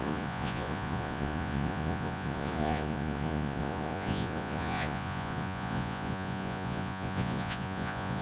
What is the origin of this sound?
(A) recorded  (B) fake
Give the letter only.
B